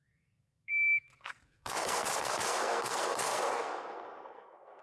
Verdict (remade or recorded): remade